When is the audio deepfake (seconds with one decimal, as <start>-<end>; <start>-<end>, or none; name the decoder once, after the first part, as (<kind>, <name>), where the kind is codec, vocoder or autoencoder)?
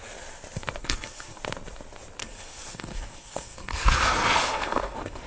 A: 0.8-1.4 (codec, SNAC); 2.2-5.3